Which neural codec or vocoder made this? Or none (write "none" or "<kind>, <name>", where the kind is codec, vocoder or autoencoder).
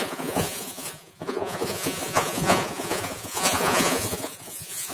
vocoder, Vocos